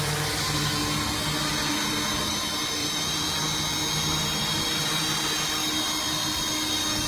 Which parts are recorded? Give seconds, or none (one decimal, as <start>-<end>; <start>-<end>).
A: 0.0-2.8; 3.4-4.4; 5.0-7.1